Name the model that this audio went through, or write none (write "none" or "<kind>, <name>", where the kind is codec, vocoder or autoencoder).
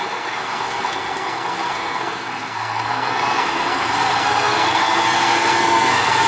codec, SNAC